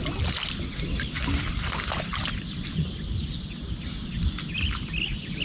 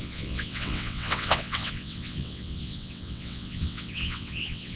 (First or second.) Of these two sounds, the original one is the first